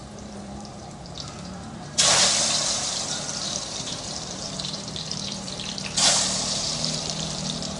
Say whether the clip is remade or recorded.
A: remade